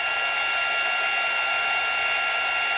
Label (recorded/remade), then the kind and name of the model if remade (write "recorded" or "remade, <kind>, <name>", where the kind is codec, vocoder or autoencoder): recorded